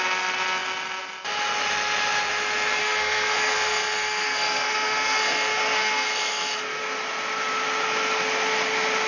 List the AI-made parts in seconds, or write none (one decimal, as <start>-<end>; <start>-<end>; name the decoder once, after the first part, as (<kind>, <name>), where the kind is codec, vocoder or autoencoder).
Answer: 2.8-6.8 (codec, SNAC)